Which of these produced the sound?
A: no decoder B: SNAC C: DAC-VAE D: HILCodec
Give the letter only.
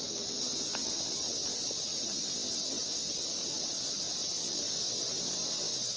A